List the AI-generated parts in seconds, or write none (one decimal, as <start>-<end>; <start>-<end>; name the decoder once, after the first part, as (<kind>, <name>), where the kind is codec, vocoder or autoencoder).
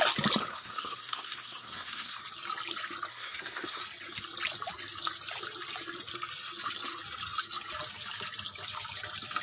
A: 0.5-2.2 (codec, SNAC); 3.1-3.8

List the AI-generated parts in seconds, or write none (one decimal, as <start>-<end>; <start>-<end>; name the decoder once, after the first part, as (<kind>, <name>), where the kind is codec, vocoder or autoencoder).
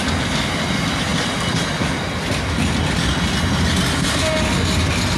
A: none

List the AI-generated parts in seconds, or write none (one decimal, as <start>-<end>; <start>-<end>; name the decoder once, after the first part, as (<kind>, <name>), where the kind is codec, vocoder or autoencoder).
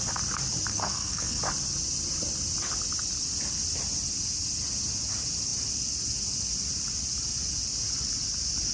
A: 0.7-1.4 (codec, SNAC)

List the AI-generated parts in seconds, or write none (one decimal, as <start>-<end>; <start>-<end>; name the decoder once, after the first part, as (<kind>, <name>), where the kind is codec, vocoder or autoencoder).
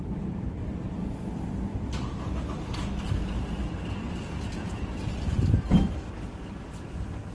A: none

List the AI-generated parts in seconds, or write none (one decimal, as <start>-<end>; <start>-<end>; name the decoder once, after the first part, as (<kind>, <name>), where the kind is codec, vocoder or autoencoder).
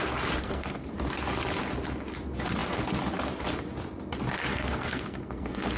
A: 0.4-0.9 (codec, SNAC); 4.5-5.8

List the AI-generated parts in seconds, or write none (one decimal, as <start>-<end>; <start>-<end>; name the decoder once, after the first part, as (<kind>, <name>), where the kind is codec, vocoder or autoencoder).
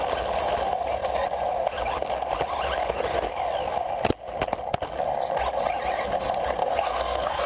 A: 6.6-7.5 (codec, SNAC)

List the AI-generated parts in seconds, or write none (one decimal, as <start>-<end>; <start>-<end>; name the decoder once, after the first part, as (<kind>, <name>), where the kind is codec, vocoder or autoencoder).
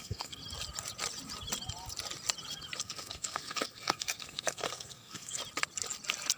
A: 0.0-0.4 (codec, SNAC); 2.8-5.4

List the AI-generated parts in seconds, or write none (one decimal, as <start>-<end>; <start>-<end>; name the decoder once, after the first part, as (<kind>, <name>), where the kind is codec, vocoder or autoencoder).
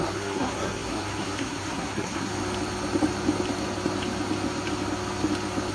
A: 0.0-2.3 (codec, SNAC)